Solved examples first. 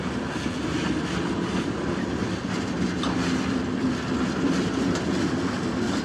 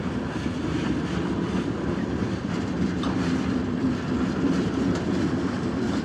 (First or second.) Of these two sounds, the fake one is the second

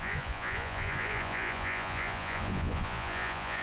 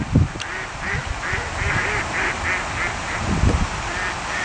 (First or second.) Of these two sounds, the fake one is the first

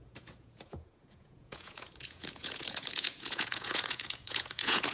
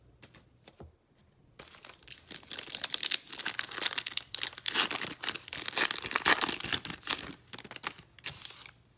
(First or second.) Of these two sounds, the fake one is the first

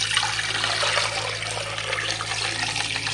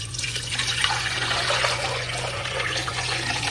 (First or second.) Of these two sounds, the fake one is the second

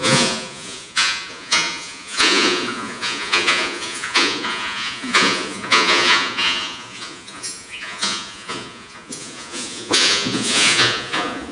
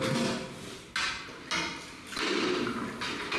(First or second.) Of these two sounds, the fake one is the first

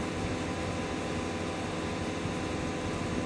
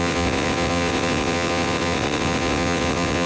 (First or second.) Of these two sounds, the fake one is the second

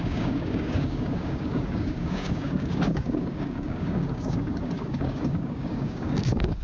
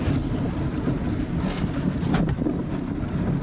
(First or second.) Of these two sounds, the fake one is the first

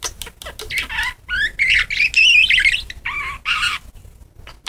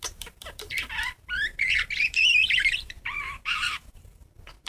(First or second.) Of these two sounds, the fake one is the second